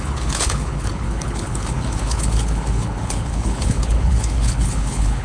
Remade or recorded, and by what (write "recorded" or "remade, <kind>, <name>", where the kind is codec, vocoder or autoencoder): remade, codec, HILCodec